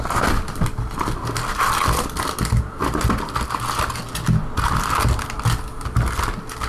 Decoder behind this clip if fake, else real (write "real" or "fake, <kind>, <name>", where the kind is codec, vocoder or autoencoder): real